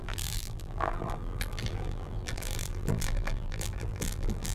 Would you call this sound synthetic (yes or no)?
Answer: yes